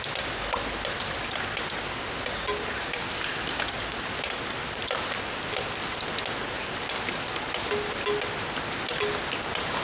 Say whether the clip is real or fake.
real